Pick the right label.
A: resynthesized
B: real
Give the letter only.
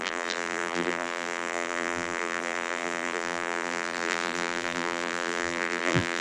A